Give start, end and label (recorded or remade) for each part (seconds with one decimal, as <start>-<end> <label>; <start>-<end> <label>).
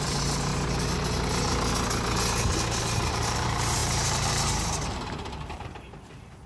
0.0-0.5 remade; 0.5-2.8 recorded; 2.8-6.5 remade